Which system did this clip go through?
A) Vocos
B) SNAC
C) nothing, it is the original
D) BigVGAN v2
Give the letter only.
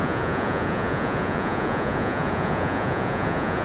A